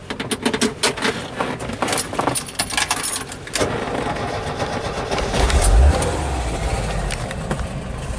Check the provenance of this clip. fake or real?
real